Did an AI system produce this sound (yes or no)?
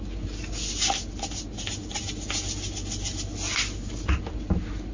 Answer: no